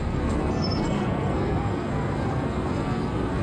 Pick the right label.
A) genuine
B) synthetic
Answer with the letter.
B